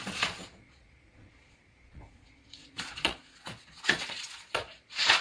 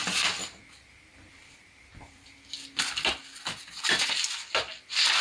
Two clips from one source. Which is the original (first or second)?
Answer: second